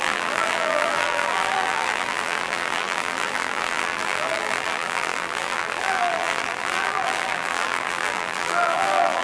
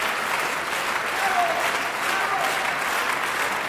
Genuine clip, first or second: second